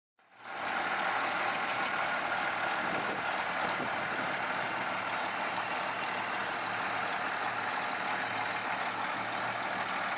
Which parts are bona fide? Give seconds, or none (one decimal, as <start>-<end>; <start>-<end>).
0.0-10.2